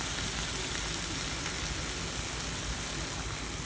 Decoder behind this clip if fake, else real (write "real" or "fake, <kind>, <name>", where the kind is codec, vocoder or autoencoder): real